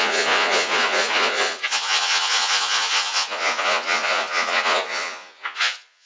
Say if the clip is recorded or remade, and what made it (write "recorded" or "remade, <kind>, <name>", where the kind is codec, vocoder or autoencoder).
remade, vocoder, Vocos